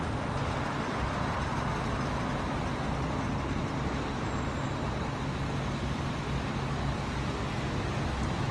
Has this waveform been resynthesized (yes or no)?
no